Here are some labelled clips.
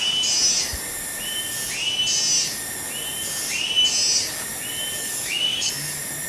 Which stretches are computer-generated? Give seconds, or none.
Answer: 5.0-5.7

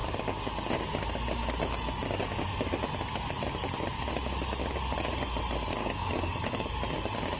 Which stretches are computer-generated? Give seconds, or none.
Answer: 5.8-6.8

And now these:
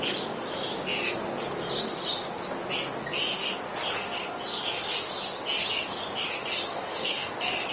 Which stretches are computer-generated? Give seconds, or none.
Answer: 6.7-7.3